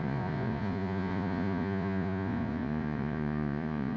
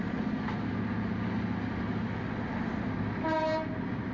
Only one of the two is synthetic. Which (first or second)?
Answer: first